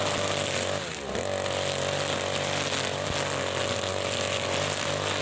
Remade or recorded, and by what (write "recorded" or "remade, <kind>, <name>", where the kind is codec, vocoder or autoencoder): recorded